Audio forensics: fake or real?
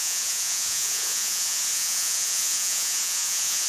fake